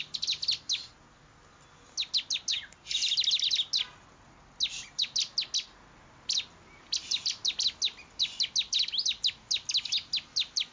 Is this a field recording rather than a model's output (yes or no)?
yes